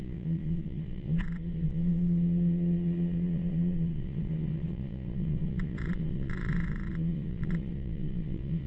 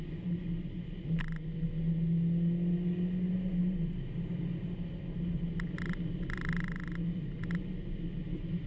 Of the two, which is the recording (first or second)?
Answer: second